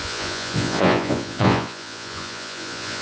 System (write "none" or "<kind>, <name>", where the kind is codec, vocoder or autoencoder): vocoder, Vocos